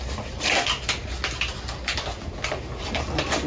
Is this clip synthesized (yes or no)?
no